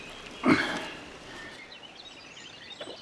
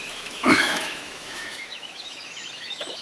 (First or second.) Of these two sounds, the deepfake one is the second